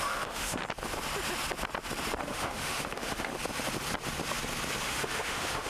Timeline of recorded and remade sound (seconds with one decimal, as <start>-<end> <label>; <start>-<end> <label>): 0.0-0.6 remade; 0.6-2.2 recorded; 2.2-3.3 remade; 3.3-4.8 recorded; 4.8-5.7 remade